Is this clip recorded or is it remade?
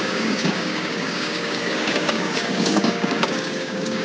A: remade